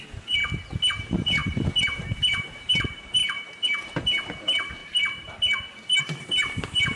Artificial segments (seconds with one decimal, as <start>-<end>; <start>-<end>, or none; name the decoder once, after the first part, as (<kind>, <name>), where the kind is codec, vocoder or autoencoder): 0.0-0.4 (vocoder, BigVGAN v2); 0.9-4.8; 6.0-7.0